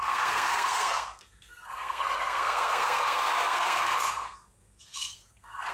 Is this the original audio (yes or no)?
no